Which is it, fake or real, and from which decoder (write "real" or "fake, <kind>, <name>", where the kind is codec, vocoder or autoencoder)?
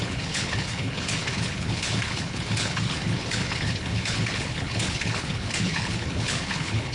fake, codec, HILCodec